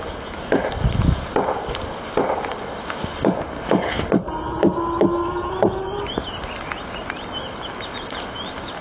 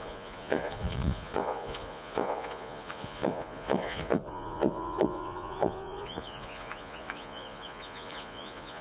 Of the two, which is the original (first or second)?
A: first